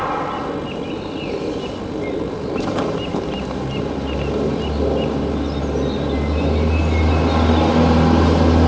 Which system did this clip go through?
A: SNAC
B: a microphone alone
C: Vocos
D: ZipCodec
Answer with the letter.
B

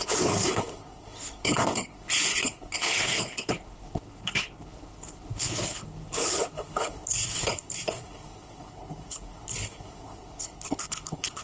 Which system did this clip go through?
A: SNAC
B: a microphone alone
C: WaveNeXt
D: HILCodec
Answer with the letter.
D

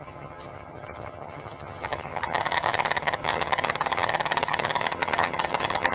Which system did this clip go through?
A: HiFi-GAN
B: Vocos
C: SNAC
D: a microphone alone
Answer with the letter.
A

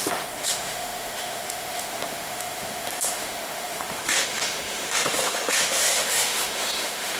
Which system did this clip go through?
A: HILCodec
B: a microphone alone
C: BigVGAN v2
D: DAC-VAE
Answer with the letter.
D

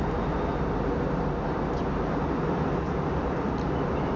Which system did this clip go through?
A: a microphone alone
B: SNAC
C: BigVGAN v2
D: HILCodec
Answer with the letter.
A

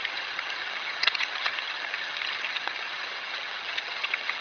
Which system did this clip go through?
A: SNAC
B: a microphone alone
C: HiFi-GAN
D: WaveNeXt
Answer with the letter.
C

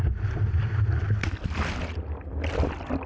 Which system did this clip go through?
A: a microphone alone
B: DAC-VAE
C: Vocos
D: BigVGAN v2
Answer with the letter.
A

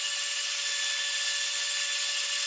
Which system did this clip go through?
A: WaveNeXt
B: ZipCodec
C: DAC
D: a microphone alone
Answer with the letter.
D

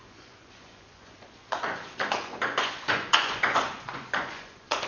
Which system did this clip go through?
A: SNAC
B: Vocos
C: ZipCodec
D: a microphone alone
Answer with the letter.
B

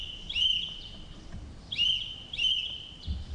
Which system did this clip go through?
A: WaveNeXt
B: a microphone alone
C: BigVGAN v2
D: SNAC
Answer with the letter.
C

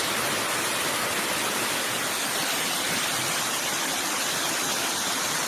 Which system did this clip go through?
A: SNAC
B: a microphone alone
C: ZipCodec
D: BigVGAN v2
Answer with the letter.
B